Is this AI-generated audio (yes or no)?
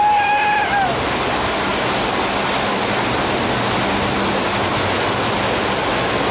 no